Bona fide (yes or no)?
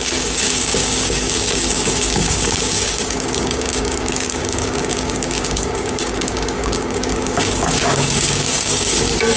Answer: no